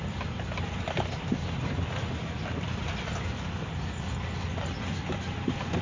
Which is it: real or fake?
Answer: real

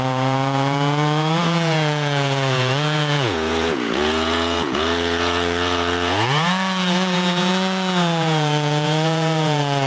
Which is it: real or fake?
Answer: fake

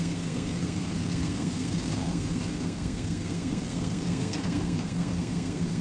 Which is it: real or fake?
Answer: fake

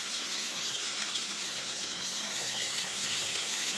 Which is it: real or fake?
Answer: fake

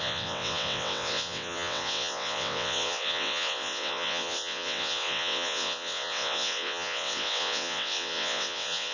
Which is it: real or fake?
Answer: fake